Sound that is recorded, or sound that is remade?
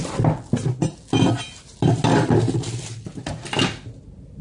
recorded